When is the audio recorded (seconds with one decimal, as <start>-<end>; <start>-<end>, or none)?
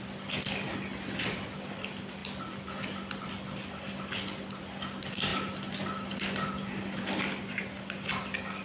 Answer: 0.0-8.6